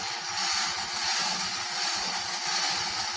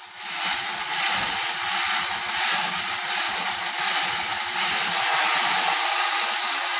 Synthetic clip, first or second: second